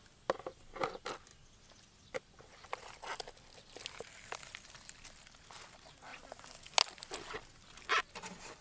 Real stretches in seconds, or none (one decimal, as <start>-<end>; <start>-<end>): 0.0-8.6